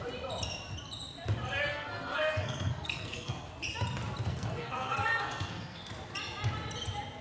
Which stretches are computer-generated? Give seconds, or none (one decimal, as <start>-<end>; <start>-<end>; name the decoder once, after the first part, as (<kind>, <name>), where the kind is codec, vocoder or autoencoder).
1.7-3.5 (codec, SNAC); 4.3-5.9

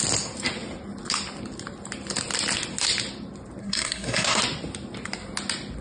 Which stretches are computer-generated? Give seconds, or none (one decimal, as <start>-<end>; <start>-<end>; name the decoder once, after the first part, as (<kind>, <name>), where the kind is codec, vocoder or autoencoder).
3.6-4.4 (codec, SNAC)